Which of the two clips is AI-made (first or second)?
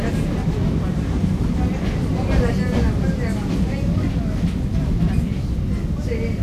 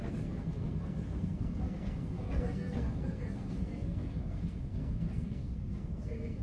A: second